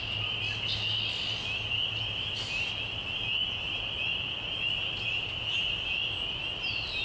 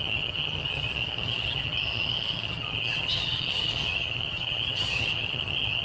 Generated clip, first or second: second